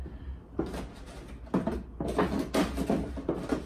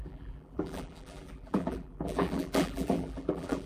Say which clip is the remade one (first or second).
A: second